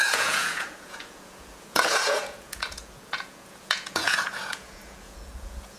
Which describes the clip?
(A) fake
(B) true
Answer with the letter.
A